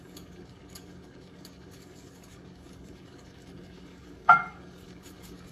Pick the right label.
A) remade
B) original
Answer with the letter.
A